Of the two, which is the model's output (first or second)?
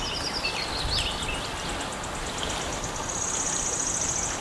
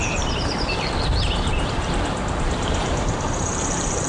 second